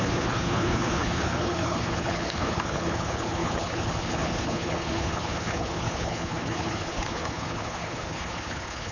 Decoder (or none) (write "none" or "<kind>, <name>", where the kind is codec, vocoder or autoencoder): codec, HILCodec